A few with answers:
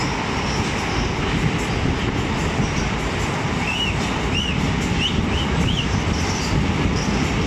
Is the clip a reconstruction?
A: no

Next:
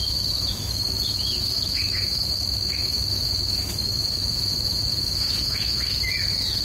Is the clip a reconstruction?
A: yes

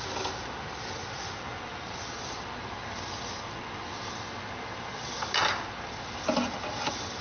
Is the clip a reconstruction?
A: no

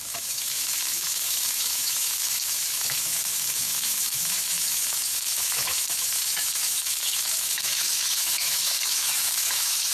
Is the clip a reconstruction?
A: yes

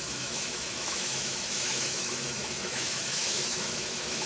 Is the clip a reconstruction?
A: yes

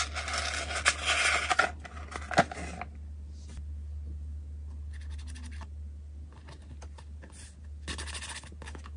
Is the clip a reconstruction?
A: no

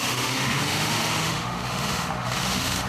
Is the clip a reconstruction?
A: yes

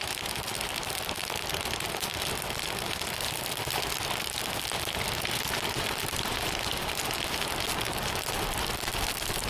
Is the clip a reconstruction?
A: no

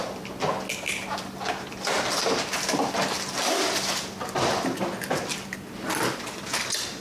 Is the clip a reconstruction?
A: no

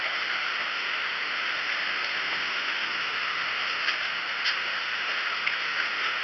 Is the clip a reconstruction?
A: yes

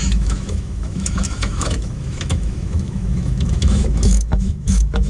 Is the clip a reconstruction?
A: yes